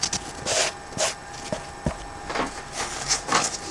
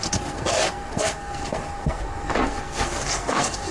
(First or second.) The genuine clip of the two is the first